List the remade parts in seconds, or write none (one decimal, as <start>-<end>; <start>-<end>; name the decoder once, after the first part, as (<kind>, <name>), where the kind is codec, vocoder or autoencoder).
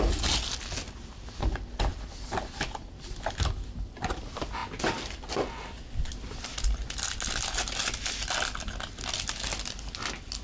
none